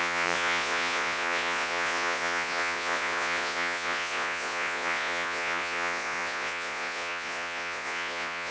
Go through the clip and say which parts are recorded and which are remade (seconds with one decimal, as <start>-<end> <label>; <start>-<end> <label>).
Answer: 0.0-8.5 remade